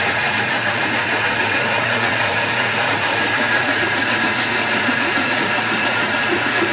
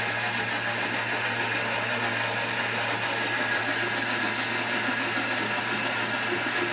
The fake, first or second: first